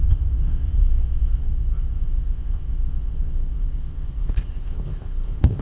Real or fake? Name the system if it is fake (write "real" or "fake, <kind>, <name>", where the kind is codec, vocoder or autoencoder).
fake, codec, ZipCodec